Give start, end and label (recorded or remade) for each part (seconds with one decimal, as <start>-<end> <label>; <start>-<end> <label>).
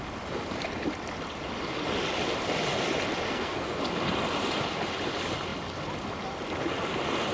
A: 0.0-3.3 recorded; 3.3-3.8 remade; 3.8-7.3 recorded